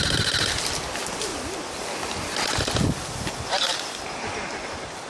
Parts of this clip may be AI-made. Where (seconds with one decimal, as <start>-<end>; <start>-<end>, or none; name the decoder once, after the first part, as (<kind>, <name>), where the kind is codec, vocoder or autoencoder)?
none